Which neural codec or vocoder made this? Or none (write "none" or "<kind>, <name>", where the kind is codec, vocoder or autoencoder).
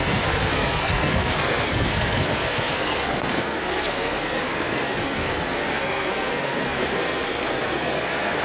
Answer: codec, SNAC